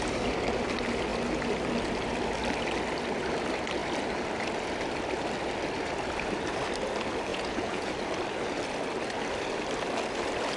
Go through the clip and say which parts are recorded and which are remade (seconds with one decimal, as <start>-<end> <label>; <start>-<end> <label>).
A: 0.0-7.3 recorded; 7.3-7.9 remade; 7.9-10.6 recorded